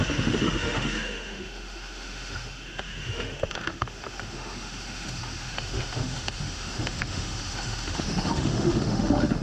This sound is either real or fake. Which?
fake